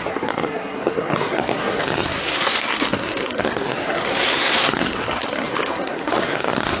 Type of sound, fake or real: fake